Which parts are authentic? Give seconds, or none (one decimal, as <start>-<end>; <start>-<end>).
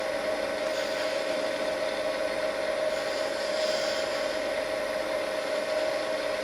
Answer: 0.0-6.4